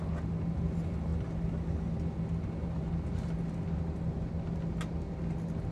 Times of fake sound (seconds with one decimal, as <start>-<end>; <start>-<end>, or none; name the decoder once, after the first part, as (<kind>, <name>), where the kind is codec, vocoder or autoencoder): none